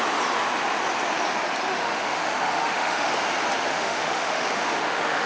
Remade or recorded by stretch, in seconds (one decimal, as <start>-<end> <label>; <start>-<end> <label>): 0.0-1.7 recorded; 1.7-3.1 remade; 3.1-3.7 recorded; 3.7-5.3 remade